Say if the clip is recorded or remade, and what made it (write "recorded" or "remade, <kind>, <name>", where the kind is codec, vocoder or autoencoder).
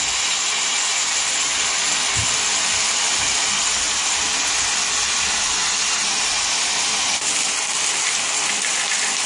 recorded